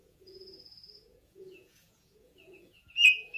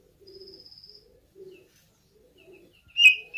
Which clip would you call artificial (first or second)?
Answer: first